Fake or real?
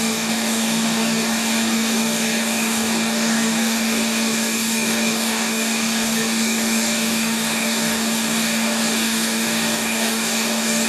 fake